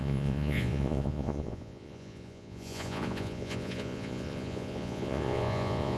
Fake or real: fake